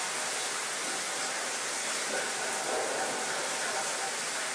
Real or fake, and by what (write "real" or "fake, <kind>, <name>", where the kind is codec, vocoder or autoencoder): real